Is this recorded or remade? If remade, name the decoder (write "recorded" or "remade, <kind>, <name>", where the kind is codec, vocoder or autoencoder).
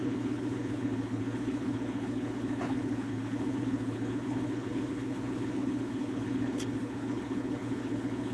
remade, codec, HILCodec